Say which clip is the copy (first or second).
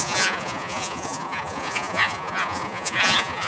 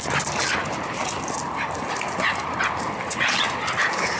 first